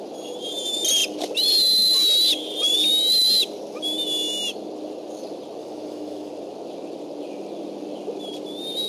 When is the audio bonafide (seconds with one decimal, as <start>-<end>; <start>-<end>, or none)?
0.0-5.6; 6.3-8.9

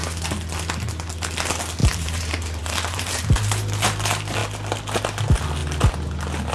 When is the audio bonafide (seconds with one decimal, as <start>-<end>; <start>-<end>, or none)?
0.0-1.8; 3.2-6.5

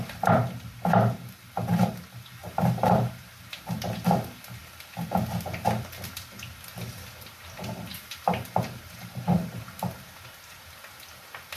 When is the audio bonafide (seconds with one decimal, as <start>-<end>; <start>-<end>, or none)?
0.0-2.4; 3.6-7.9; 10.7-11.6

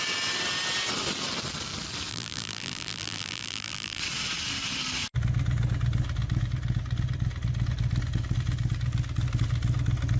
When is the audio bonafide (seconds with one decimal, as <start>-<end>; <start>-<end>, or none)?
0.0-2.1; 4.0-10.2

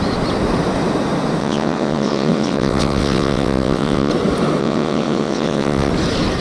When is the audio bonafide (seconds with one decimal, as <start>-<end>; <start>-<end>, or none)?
0.0-1.4; 4.1-4.6; 5.9-6.4

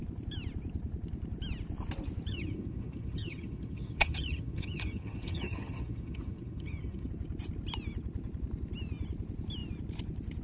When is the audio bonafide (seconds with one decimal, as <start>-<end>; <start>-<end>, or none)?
0.0-2.3; 7.1-10.4

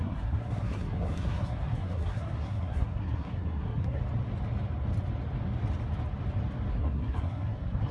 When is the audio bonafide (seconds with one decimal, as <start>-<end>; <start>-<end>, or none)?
4.0-6.7